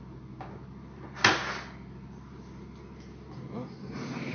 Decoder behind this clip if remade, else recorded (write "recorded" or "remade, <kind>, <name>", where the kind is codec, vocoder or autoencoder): recorded